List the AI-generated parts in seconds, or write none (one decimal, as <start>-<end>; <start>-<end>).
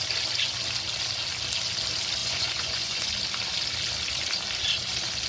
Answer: 2.2-3.1